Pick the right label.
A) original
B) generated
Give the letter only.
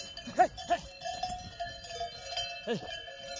A